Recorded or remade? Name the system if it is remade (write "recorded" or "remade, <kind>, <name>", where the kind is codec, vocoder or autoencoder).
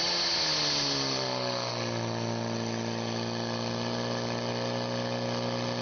recorded